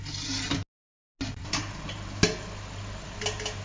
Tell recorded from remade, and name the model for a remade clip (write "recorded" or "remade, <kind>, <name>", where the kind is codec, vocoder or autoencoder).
recorded